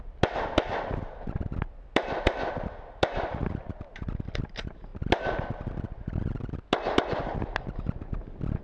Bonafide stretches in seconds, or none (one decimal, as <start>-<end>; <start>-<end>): 0.0-8.6